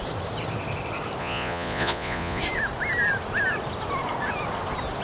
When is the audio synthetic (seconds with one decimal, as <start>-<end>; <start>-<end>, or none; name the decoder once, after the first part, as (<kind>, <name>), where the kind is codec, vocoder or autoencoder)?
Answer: 1.2-2.4 (vocoder, Vocos)

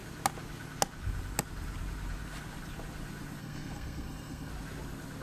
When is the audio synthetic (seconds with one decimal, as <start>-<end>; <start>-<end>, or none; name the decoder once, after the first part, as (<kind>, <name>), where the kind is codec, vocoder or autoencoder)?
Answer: 3.4-4.5 (codec, SNAC)

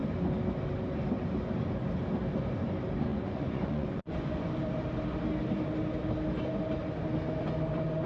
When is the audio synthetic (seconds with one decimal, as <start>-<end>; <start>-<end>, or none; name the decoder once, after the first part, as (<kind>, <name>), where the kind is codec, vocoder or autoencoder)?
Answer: 3.1-4.5 (vocoder, Vocos)

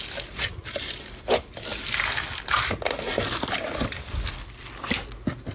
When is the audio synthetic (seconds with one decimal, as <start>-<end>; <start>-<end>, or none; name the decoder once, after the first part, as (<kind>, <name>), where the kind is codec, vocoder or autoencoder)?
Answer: none

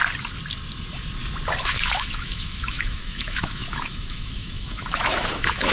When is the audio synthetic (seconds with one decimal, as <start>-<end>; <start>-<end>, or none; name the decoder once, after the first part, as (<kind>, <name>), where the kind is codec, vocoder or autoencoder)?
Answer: 1.6-5.7 (autoencoder, DAC-VAE)

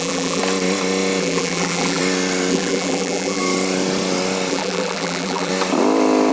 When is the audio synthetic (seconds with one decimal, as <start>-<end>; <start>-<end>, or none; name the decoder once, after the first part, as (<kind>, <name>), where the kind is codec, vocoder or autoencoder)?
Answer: 0.0-0.4 (vocoder, BigVGAN v2); 1.2-2.0; 2.5-3.4; 4.5-5.5